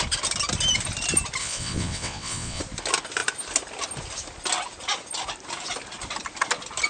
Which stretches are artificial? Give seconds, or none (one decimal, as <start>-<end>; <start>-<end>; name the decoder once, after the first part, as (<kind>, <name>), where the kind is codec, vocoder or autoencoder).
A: 1.4-2.6 (vocoder, WaveNeXt)